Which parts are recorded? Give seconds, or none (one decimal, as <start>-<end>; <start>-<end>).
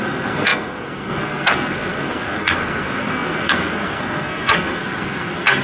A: none